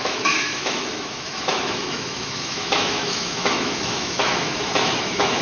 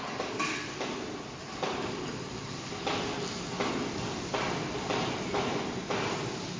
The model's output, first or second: first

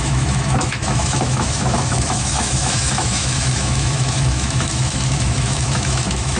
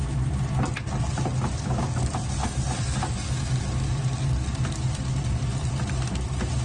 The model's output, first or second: first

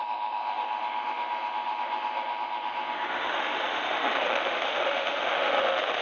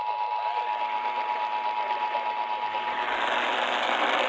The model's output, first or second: first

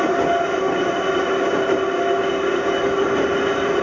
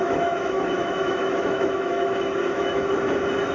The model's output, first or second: second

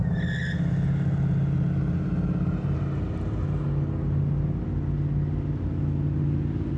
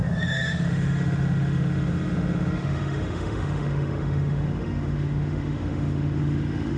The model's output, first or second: second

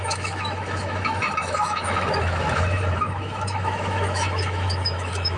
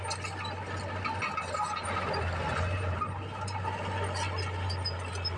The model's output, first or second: first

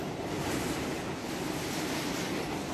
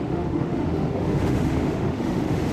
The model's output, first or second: second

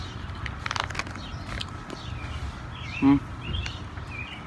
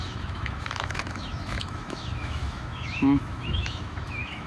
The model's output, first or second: second